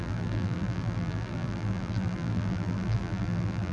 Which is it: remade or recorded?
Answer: remade